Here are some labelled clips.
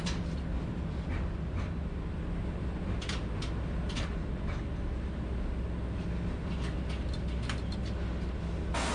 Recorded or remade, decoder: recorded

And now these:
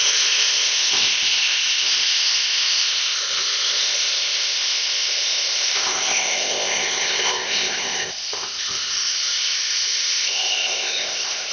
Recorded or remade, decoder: remade, codec, ZipCodec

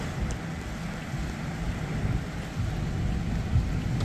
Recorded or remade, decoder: recorded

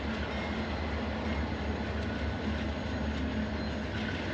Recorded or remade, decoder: recorded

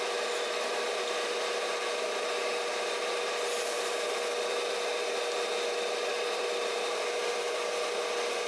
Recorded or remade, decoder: recorded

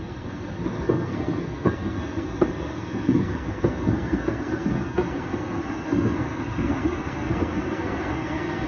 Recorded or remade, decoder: remade, codec, SNAC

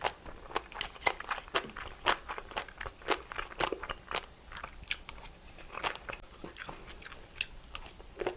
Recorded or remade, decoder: recorded